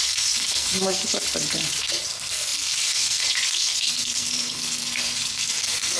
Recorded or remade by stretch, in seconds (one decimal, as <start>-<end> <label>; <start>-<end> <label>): 0.0-1.0 remade; 1.0-1.8 recorded; 1.8-6.0 remade